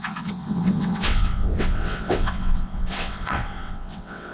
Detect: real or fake fake